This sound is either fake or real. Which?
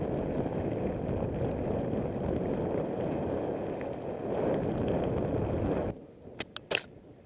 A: real